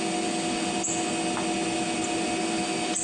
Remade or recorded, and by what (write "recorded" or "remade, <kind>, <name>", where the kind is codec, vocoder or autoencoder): recorded